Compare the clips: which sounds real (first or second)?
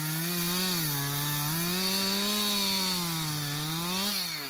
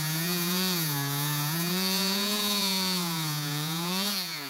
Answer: first